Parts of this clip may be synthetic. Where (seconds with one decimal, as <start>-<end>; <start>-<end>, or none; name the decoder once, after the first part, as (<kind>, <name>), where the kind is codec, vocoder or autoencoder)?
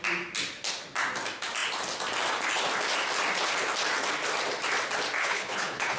5.2-6.0 (codec, HILCodec)